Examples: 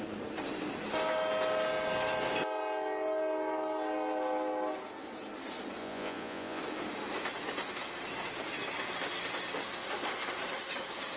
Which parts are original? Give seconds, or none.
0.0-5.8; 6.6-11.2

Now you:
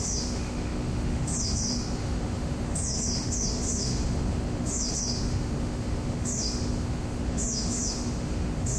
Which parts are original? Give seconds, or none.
none

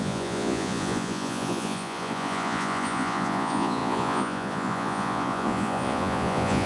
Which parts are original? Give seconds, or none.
none

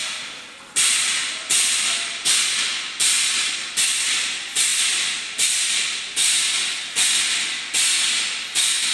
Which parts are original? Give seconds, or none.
2.4-4.7; 5.8-8.9

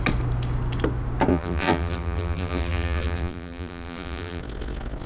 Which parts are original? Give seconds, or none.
0.0-1.3; 4.4-5.1

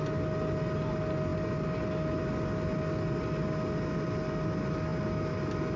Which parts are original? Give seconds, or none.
0.0-5.8

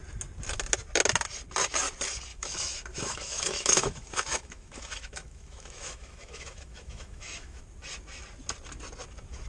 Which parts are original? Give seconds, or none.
0.0-2.3; 7.6-9.5